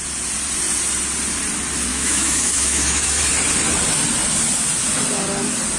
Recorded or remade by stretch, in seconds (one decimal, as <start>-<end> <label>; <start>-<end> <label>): 0.0-1.9 recorded; 1.9-3.2 remade; 3.2-5.8 recorded